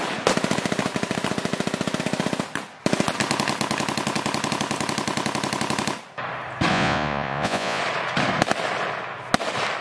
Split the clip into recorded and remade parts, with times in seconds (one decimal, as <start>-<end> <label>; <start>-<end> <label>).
0.0-6.7 recorded; 6.7-7.8 remade; 7.8-9.8 recorded